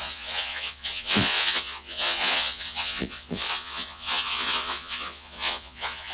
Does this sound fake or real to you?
fake